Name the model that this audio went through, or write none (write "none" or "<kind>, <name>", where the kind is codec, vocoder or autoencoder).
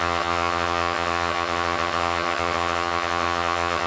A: vocoder, HiFi-GAN